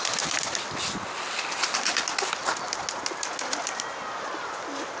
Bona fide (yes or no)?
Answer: yes